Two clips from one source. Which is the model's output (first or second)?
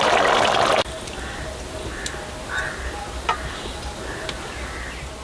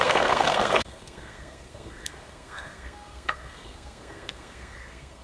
second